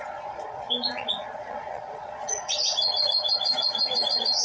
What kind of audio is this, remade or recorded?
remade